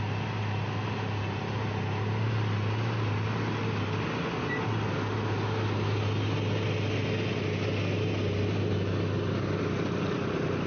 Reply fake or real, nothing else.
real